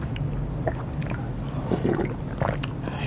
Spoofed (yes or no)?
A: no